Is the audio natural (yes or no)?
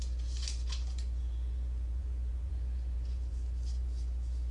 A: no